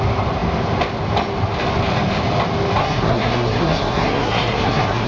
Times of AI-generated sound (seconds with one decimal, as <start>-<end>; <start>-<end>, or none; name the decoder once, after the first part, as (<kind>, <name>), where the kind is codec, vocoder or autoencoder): 2.8-5.1 (codec, SNAC)